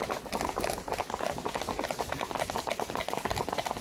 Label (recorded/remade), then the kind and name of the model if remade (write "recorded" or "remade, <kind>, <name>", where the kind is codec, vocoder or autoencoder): recorded